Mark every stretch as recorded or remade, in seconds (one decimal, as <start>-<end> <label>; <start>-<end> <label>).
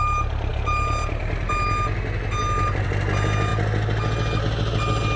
0.0-5.2 recorded